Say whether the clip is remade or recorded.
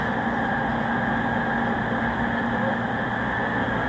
recorded